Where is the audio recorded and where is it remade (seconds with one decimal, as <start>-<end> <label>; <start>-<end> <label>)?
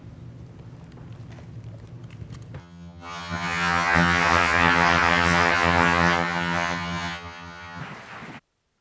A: 0.0-2.6 recorded; 2.6-7.8 remade; 7.8-8.8 recorded